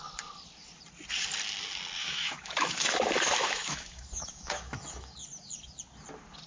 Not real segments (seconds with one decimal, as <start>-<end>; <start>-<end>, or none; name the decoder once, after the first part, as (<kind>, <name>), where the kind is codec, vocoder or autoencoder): 2.0-5.1 (autoencoder, DAC-VAE)